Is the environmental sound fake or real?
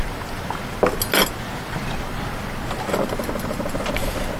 real